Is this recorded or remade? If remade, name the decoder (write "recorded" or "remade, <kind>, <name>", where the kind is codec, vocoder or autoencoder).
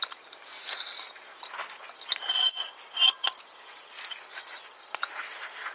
recorded